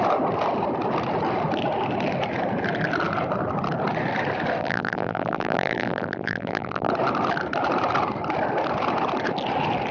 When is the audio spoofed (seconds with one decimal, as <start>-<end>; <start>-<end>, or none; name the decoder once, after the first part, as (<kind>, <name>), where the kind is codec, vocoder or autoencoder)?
4.6-6.9 (vocoder, BigVGAN v2)